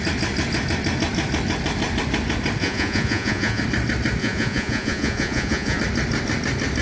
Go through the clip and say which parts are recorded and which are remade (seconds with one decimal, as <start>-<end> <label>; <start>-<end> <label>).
0.0-2.6 recorded; 2.6-3.6 remade; 3.6-4.2 recorded; 4.2-5.8 remade; 5.8-6.8 recorded